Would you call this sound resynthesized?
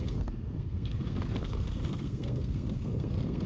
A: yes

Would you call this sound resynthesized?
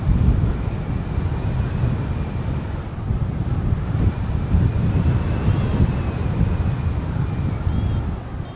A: no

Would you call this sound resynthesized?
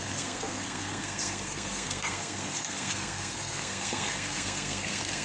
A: yes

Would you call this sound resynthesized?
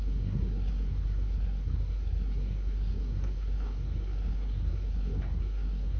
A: yes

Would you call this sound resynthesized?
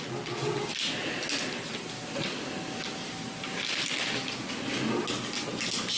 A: no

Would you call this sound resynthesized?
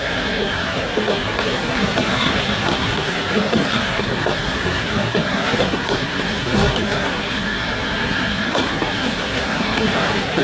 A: yes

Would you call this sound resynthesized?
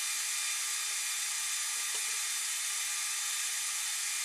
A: no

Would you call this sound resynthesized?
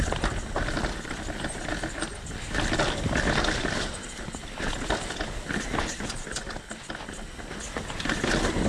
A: no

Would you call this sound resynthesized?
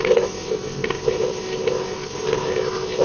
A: yes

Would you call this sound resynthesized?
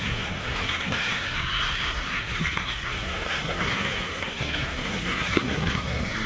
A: yes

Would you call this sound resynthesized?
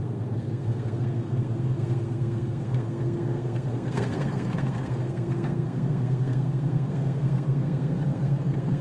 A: yes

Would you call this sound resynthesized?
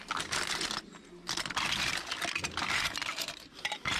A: no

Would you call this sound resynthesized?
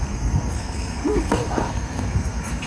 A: yes